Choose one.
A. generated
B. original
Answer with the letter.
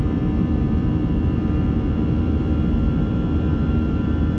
A